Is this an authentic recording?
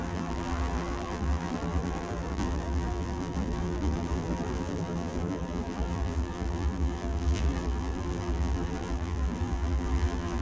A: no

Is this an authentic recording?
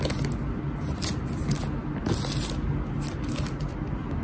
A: yes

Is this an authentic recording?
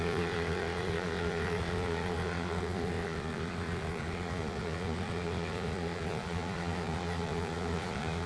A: no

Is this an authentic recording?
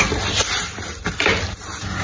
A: yes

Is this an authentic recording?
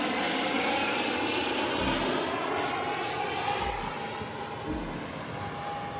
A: yes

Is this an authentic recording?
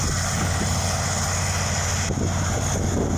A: yes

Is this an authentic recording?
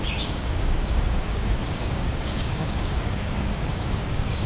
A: no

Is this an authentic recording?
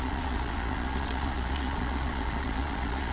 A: no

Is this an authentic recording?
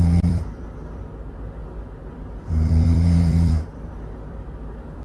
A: no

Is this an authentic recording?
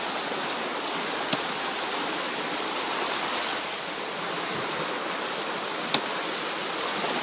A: yes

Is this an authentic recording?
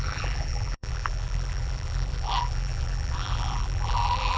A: no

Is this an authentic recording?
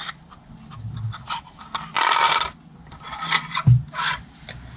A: yes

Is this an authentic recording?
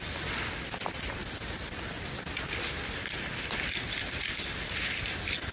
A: no